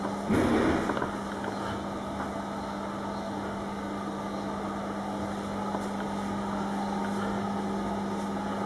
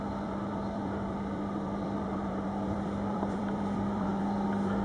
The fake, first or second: second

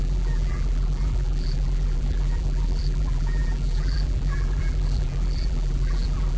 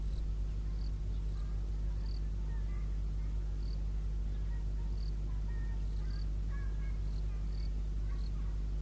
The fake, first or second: first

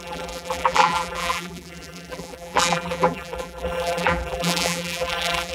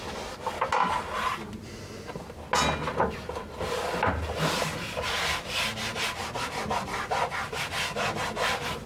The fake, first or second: first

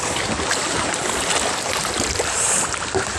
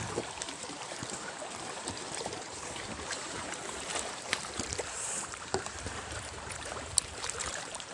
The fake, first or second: second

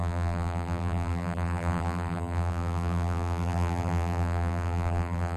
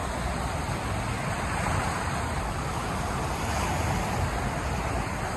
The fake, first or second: first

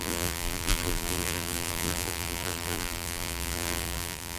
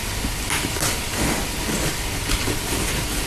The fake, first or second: first